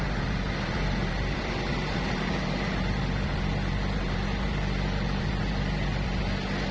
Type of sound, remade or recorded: recorded